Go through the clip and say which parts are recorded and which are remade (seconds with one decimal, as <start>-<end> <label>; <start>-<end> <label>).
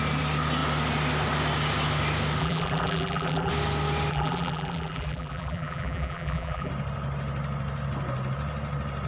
0.0-2.4 recorded; 2.4-3.5 remade; 3.5-4.1 recorded; 4.1-6.7 remade; 6.7-9.1 recorded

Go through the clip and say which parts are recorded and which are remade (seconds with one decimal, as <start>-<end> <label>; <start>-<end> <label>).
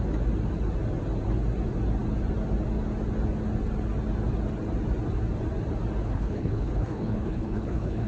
0.0-6.0 recorded; 6.0-8.1 remade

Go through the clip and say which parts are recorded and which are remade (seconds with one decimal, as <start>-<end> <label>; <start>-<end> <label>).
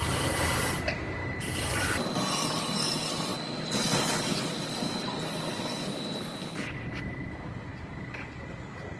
0.0-9.0 recorded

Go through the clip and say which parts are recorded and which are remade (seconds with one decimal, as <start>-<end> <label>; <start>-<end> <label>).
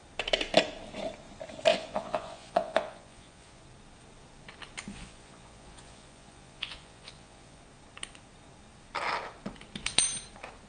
0.0-1.7 recorded; 1.7-3.6 remade; 3.6-4.9 recorded; 4.9-7.6 remade; 7.6-10.7 recorded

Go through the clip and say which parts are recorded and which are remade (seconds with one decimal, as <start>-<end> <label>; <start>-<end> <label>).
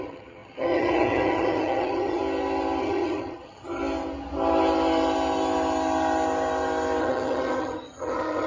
0.0-2.2 remade; 2.2-2.8 recorded; 2.8-3.8 remade; 3.8-7.0 recorded; 7.0-8.5 remade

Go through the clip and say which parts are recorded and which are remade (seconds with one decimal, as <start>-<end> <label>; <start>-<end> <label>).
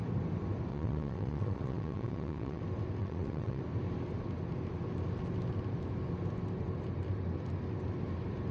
0.0-0.7 recorded; 0.7-2.6 remade; 2.6-3.0 recorded; 3.0-3.6 remade; 3.6-8.5 recorded